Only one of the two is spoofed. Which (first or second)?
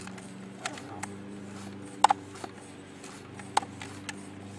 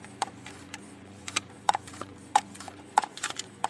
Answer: second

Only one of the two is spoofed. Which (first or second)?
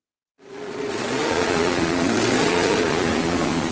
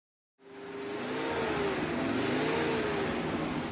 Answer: first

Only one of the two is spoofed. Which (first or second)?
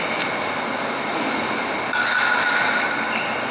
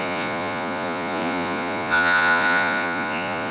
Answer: second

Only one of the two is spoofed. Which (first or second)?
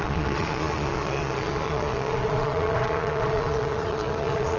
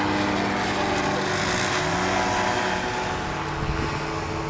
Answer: first